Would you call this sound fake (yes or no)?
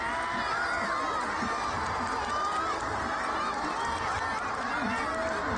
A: no